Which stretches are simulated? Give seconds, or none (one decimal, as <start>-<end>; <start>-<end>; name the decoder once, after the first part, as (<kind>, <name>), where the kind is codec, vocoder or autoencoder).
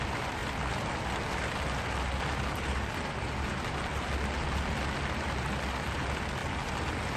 none